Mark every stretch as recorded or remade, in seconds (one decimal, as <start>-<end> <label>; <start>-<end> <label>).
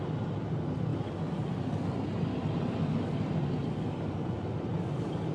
0.0-5.3 recorded